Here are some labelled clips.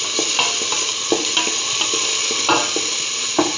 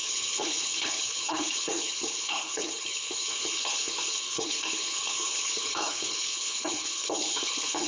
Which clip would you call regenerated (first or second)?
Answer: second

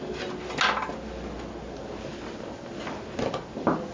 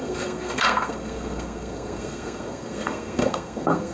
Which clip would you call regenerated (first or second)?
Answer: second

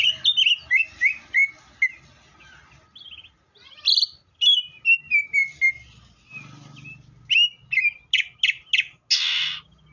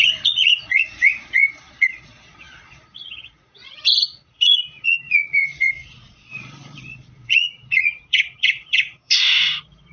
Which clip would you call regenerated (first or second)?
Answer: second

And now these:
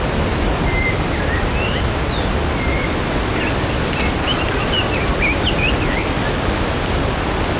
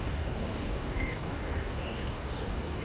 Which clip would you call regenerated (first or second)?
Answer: second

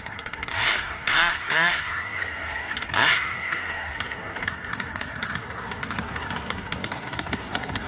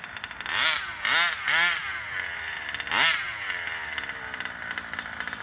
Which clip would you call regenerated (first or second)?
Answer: first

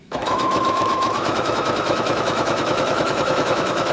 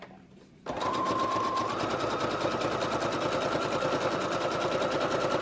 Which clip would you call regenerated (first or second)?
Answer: first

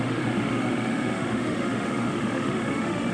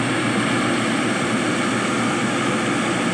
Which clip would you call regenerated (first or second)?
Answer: first